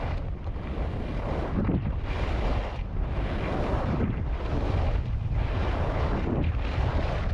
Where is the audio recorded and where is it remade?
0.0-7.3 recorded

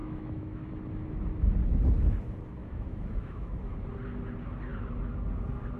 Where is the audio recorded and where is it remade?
0.0-0.7 remade; 0.7-2.6 recorded; 2.6-3.7 remade; 3.7-5.8 recorded

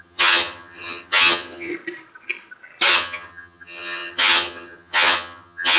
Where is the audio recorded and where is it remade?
0.0-1.7 remade; 1.7-2.9 recorded; 2.9-5.8 remade

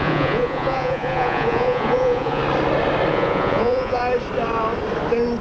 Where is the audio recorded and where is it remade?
0.0-2.4 remade; 2.4-3.1 recorded; 3.1-4.0 remade; 4.0-5.4 recorded

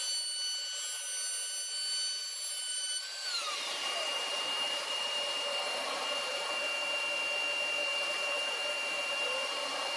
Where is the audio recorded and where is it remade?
0.0-2.2 recorded; 2.2-7.0 remade; 7.0-7.9 recorded; 7.9-9.5 remade; 9.5-10.0 recorded

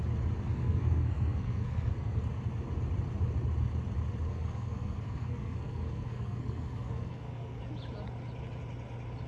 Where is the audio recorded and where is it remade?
0.0-0.5 recorded; 0.5-2.2 remade; 2.2-4.3 recorded; 4.3-7.6 remade; 7.6-9.3 recorded

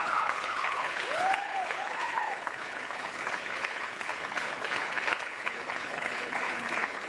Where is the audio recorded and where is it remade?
0.0-7.1 remade